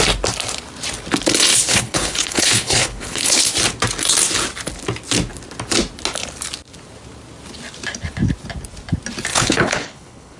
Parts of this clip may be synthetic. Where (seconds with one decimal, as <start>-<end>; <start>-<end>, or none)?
1.5-3.4; 9.3-10.4